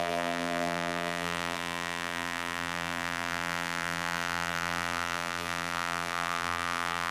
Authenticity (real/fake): fake